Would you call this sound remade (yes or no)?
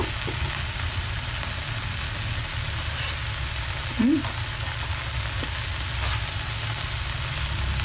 no